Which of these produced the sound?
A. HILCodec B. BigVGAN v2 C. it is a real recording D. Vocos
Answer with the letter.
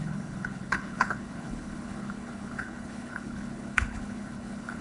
A